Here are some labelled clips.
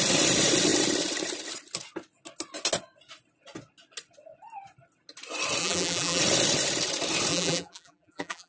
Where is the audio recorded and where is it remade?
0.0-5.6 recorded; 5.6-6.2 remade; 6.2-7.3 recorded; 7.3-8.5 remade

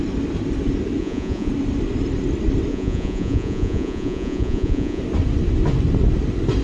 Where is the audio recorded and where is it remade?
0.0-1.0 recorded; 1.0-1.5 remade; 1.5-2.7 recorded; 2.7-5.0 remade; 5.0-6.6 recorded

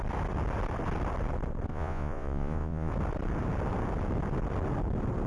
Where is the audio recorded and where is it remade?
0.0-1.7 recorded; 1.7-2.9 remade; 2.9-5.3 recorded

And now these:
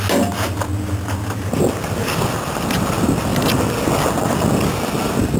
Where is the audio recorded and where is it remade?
0.0-5.4 recorded

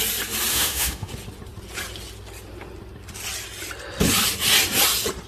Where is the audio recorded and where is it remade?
0.0-0.5 recorded; 0.5-1.1 remade; 1.1-5.3 recorded